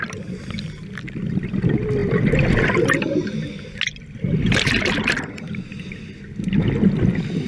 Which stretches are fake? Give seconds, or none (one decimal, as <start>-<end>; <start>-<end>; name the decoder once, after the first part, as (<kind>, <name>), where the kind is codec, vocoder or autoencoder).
none